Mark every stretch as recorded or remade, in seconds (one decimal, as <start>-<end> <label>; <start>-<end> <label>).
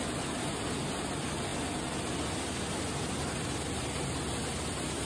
0.0-5.1 recorded